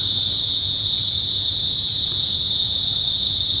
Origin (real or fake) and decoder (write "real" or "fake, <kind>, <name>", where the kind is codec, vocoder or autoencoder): fake, vocoder, Vocos